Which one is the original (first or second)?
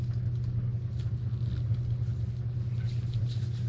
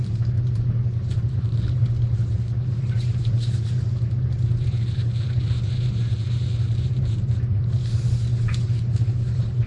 first